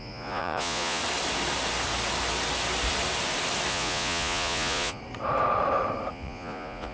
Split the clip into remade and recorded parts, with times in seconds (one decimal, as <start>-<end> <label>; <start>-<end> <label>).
0.0-1.0 remade; 1.0-3.7 recorded; 3.7-5.0 remade; 5.0-6.1 recorded; 6.1-6.9 remade